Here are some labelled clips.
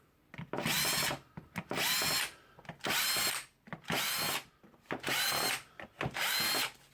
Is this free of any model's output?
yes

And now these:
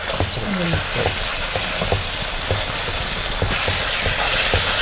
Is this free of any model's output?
yes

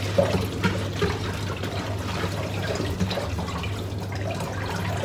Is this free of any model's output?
yes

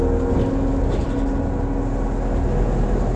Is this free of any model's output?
yes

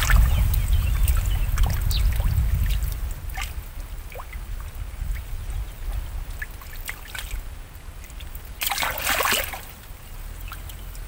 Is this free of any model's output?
yes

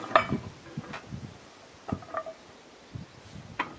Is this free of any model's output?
yes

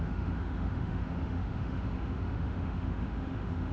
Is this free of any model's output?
no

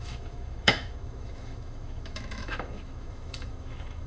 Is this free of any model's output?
no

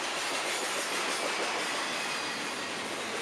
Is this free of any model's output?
yes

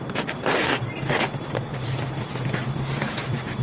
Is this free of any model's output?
yes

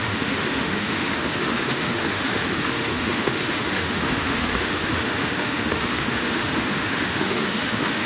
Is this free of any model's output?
no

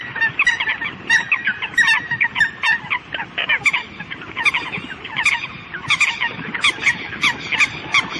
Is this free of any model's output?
yes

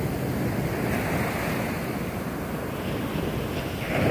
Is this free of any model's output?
yes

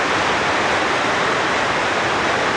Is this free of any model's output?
yes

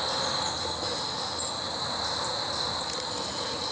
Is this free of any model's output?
yes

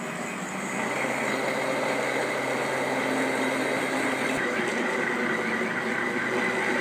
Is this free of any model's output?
yes